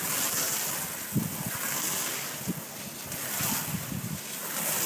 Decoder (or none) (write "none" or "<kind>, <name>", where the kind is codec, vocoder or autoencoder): none